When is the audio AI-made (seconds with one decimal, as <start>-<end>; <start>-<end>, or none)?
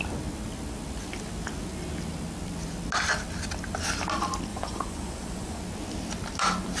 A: 4.5-5.6